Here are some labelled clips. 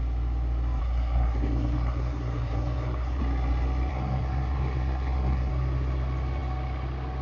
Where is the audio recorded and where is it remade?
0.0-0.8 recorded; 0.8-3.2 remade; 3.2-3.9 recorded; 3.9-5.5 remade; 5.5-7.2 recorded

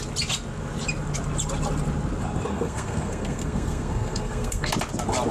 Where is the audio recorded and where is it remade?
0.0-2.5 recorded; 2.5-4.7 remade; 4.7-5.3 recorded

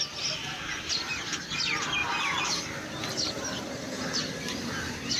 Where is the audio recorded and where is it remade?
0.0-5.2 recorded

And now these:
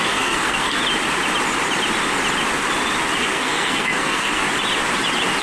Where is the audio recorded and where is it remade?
0.0-0.8 remade; 0.8-3.2 recorded; 3.2-4.4 remade; 4.4-5.4 recorded